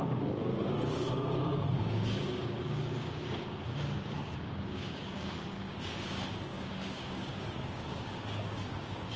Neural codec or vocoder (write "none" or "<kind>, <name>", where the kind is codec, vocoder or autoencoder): codec, DAC